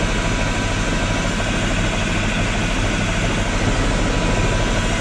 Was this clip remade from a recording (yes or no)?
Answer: no